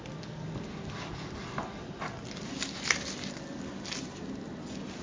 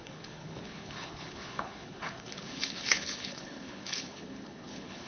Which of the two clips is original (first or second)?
first